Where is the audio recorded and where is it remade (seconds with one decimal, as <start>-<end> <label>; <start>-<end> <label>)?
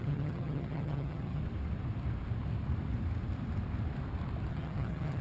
0.0-1.4 remade; 1.4-4.5 recorded; 4.5-5.2 remade